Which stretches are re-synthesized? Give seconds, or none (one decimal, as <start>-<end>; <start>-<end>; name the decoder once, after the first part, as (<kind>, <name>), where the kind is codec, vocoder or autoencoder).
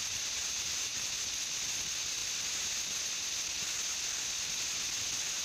0.4-1.1 (vocoder, BigVGAN v2)